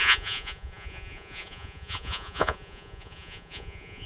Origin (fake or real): fake